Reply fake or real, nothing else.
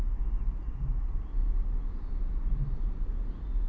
real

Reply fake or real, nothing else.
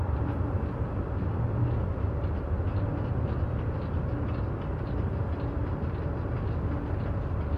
real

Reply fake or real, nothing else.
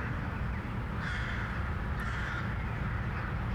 real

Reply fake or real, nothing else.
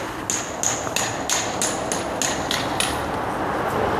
real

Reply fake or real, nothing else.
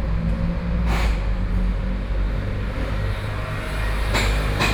real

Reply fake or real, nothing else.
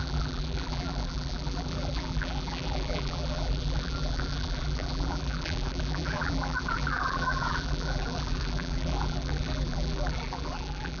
fake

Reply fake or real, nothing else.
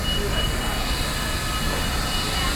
real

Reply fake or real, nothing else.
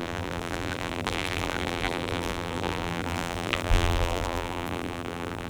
fake